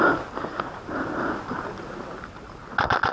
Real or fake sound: real